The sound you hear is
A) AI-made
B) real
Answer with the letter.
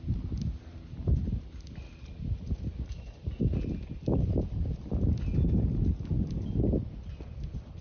B